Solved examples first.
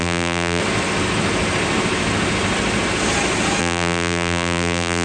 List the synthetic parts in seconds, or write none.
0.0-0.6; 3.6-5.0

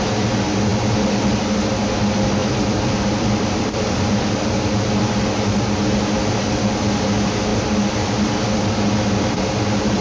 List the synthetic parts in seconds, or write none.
2.4-4.3